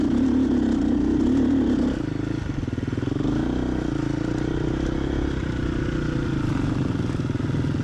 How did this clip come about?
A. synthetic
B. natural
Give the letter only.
B